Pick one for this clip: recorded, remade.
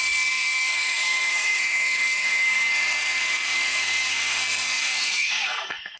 remade